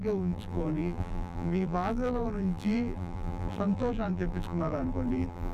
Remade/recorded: remade